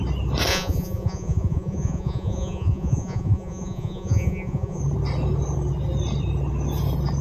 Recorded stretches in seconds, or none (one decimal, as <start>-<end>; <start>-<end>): 0.0-0.5; 4.8-7.2